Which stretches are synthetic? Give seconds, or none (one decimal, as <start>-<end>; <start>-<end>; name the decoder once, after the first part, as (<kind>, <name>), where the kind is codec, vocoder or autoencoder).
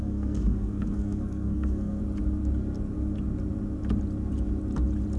0.0-2.0 (codec, SNAC)